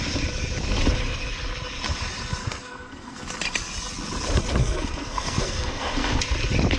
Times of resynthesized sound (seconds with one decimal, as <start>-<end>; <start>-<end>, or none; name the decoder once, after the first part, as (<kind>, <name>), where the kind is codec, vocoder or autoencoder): 2.4-3.2 (codec, SNAC); 4.6-6.2